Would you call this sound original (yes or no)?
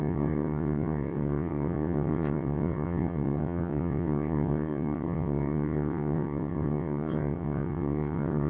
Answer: no